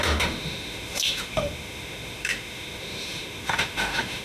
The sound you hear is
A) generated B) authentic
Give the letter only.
A